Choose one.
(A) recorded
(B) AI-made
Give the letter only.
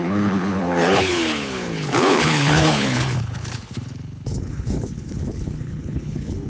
B